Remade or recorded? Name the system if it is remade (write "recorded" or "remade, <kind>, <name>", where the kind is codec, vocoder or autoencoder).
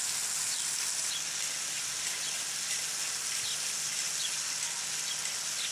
recorded